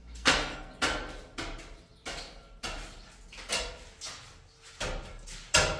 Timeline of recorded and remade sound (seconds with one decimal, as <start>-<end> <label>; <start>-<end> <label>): 0.0-0.7 remade; 0.7-5.8 recorded